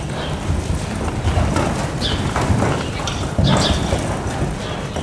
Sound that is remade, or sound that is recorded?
recorded